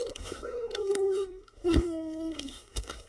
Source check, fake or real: fake